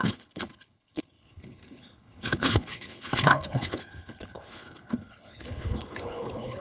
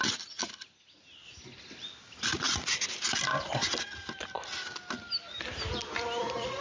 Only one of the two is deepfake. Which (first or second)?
first